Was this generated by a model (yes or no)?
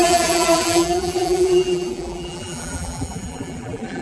yes